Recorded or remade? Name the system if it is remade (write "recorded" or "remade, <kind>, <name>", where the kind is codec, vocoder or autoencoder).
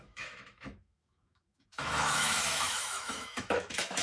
remade, autoencoder, DAC-VAE